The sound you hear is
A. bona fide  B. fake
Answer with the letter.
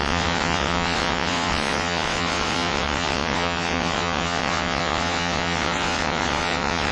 B